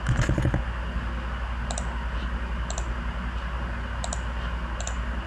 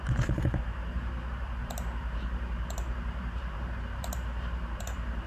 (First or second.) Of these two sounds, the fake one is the second